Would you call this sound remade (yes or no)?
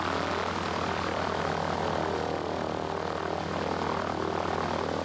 no